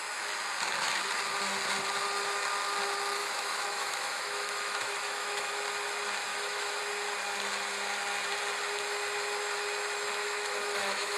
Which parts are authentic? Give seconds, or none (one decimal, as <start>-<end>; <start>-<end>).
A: 0.0-3.2; 5.6-6.3; 6.8-10.2